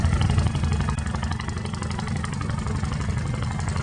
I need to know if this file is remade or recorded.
recorded